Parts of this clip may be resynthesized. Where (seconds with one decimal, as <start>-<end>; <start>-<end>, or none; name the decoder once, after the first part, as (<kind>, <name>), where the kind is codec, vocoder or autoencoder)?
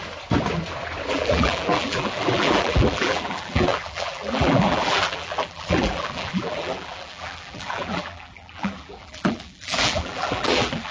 1.1-10.9 (vocoder, BigVGAN v2)